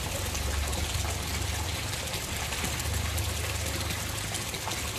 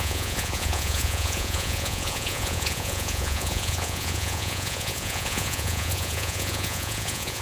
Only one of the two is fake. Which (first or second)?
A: second